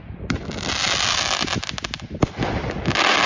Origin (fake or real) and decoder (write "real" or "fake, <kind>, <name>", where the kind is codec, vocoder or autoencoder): real